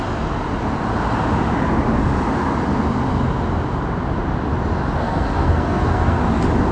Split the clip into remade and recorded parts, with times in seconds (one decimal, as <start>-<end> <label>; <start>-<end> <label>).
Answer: 0.0-5.0 recorded; 5.0-6.2 remade; 6.2-6.7 recorded